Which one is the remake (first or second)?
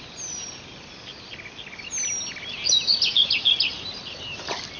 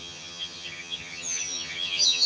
second